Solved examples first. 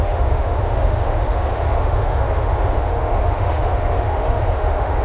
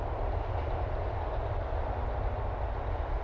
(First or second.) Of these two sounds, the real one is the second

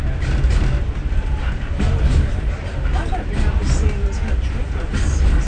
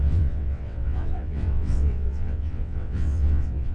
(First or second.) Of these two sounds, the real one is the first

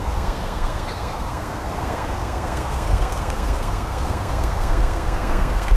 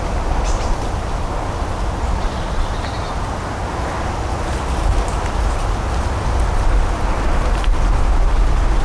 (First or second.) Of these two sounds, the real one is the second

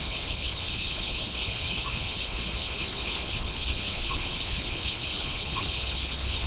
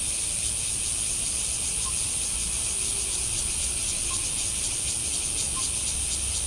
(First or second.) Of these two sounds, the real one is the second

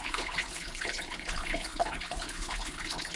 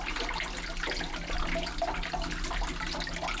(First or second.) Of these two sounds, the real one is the second